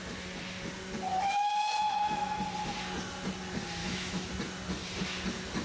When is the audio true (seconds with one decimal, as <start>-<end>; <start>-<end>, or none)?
0.0-1.1; 2.4-3.8; 4.3-5.6